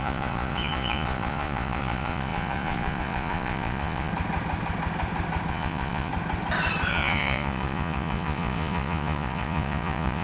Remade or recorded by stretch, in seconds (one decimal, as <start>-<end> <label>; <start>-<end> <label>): 0.0-4.1 remade; 4.1-5.5 recorded; 5.5-6.1 remade; 6.1-6.9 recorded; 6.9-10.2 remade